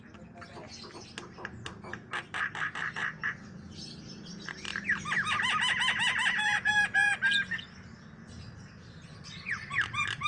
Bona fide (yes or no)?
yes